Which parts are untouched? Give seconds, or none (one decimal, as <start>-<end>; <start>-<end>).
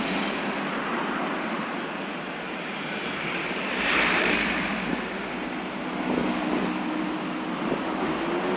0.0-1.2; 4.7-8.6